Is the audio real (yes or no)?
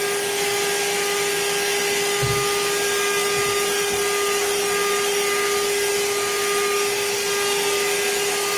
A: yes